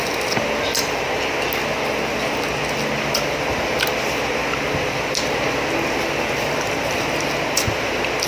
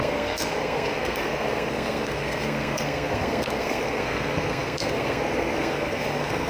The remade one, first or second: second